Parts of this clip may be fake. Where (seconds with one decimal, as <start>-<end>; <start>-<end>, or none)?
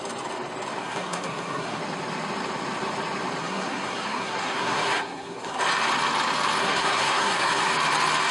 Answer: 0.8-1.8; 3.4-5.6; 6.6-7.7